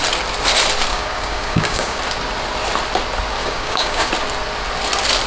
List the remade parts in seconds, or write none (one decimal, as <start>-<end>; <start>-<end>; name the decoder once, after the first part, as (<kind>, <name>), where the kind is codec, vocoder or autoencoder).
0.9-2.0 (codec, DAC); 3.4-4.1